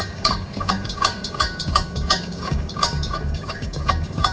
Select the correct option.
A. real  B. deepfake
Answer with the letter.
B